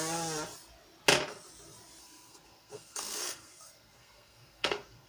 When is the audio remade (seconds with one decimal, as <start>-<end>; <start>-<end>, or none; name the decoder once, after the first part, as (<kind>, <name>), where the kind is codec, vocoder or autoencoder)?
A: 2.0-5.1 (codec, SNAC)